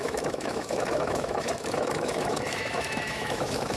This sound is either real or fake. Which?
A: fake